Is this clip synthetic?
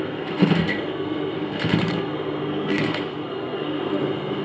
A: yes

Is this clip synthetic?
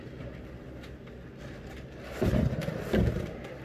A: no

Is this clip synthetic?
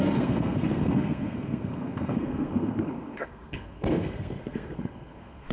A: yes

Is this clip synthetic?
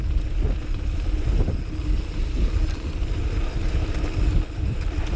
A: no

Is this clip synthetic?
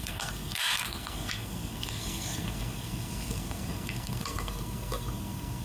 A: yes